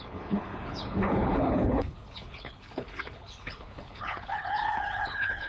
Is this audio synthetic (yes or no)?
yes